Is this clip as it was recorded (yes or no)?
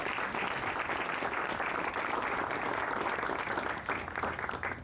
yes